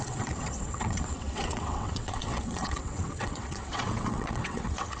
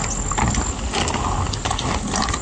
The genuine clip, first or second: second